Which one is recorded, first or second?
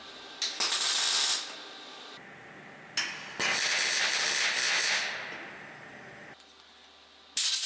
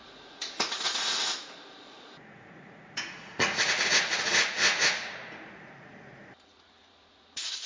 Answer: first